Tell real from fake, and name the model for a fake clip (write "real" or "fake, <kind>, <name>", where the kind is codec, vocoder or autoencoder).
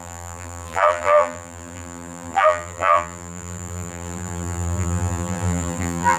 fake, vocoder, BigVGAN v2